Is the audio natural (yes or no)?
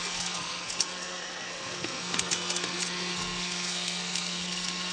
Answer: no